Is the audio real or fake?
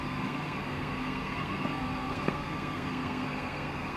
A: fake